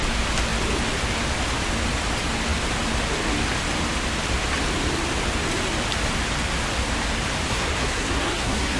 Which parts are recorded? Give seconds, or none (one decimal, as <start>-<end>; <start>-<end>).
0.0-7.5